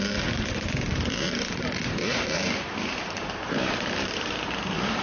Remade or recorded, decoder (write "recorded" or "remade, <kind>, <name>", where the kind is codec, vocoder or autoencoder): remade, vocoder, BigVGAN v2